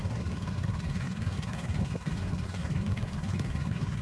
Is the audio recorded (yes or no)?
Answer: no